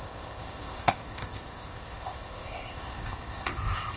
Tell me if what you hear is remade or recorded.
remade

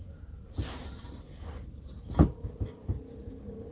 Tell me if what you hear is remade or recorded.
recorded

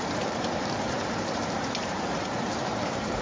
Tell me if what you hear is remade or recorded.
remade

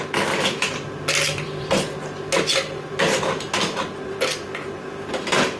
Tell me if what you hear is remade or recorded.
recorded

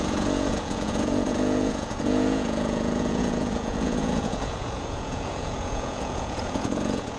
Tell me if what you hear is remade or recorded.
remade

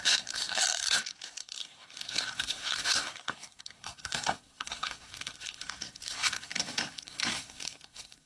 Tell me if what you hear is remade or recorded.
remade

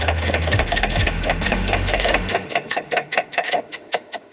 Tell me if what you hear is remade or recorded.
remade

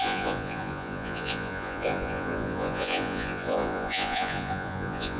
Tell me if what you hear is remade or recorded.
remade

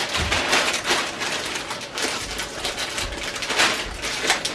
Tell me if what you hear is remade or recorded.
recorded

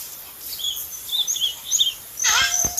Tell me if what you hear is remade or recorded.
recorded